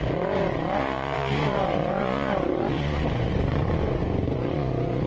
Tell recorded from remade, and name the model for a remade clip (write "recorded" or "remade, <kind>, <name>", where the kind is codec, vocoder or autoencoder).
remade, vocoder, Vocos